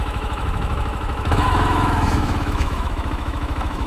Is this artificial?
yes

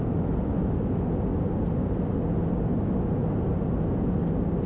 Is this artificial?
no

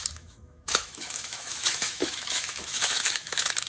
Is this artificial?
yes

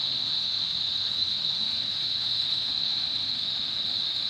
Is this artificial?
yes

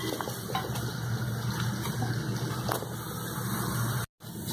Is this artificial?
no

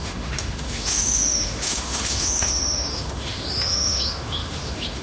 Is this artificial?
yes